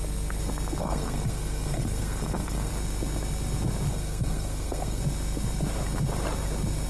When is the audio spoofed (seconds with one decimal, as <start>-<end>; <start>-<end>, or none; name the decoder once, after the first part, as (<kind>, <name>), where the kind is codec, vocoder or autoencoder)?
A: 0.8-2.7 (codec, SNAC); 3.9-5.0